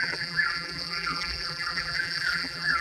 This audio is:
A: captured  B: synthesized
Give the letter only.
B